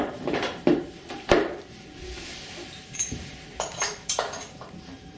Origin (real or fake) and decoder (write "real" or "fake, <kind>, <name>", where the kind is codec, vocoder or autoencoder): fake, vocoder, BigVGAN v2